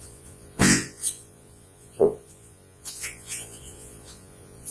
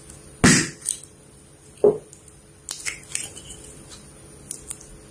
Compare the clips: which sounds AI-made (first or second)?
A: first